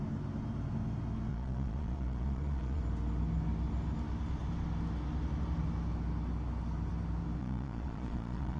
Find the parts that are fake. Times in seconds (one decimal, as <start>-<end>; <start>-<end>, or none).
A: 1.3-2.8; 7.4-8.6